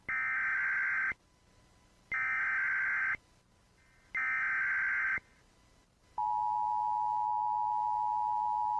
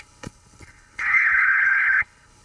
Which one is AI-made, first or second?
second